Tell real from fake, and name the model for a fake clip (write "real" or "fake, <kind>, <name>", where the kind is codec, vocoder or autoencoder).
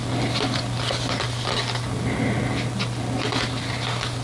real